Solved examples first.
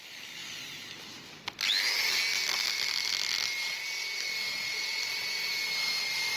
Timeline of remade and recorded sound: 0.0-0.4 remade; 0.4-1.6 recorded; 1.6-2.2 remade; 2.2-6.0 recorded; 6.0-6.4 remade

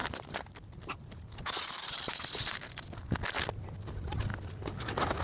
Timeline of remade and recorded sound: 0.0-2.2 remade; 2.2-4.3 recorded; 4.3-5.2 remade

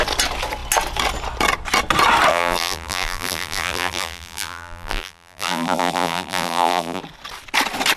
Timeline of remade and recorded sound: 0.0-2.3 recorded; 2.3-7.0 remade; 7.0-8.0 recorded